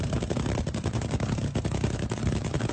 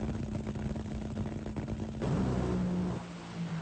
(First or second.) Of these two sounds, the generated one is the first